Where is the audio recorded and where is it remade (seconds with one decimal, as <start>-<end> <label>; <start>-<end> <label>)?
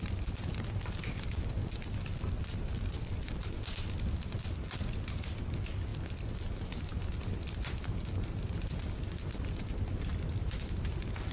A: 0.0-1.6 recorded; 1.6-5.2 remade; 5.2-11.3 recorded